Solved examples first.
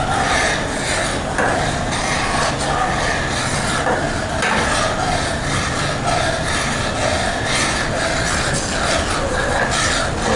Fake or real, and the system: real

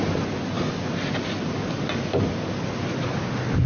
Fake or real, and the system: real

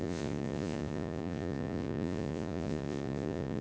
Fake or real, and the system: fake, vocoder, Vocos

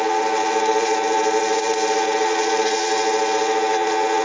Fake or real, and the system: fake, vocoder, Vocos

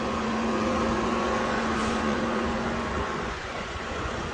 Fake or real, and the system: fake, vocoder, Vocos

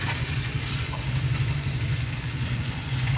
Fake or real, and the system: fake, vocoder, Vocos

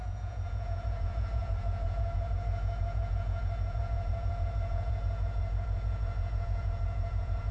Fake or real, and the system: fake, vocoder, Vocos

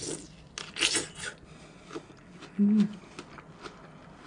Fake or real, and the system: real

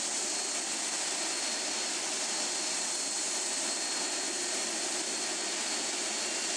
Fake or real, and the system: real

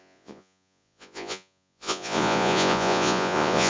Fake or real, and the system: fake, vocoder, Vocos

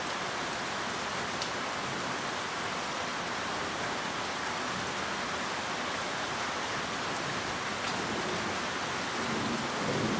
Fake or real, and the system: real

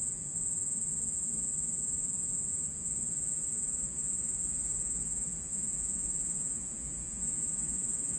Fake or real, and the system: fake, vocoder, Vocos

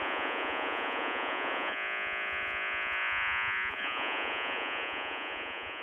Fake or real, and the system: fake, vocoder, Vocos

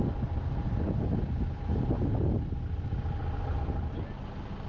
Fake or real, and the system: real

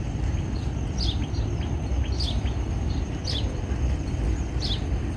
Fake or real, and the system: real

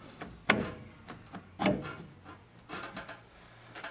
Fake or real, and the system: real